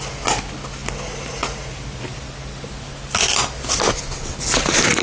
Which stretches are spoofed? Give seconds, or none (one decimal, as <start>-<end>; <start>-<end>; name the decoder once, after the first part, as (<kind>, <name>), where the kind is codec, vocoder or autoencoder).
none